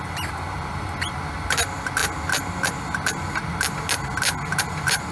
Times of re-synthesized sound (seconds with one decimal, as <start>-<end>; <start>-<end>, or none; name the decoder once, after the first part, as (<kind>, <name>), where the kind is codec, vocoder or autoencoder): none